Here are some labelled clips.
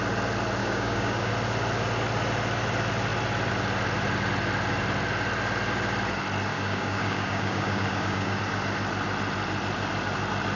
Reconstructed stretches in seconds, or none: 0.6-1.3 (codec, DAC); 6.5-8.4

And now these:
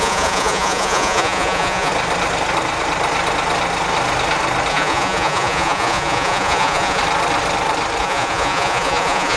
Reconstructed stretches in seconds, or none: 0.0-1.9 (vocoder, Vocos); 4.7-7.0; 8.0-9.4

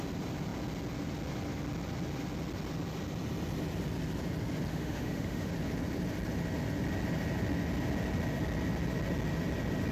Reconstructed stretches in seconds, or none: 4.7-5.5 (autoencoder, DAC-VAE)